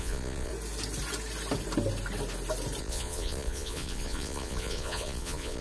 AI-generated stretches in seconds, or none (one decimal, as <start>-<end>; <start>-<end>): 0.0-0.5; 2.8-5.6

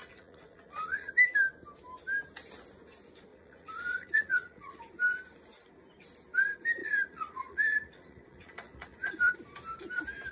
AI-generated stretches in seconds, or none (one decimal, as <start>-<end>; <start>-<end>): 0.0-1.1; 3.3-4.8; 6.8-9.3

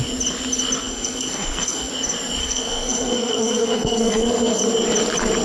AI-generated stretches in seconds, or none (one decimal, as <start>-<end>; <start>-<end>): 0.8-1.9; 2.4-4.6

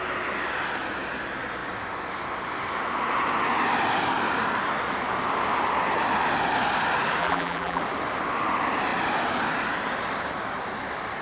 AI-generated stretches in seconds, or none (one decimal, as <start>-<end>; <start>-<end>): 7.2-7.8

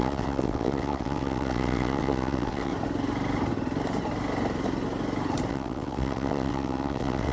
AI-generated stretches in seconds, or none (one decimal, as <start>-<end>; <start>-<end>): 0.0-2.7; 5.5-7.3

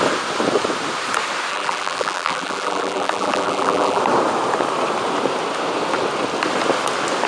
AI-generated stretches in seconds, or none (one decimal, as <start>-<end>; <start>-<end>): 1.5-4.0

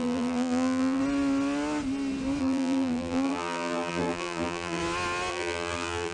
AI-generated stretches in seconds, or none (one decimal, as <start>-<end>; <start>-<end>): 0.0-1.0; 2.4-4.8; 5.3-6.1

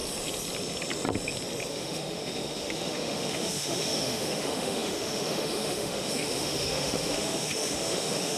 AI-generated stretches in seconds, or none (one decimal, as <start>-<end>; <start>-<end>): 1.7-8.4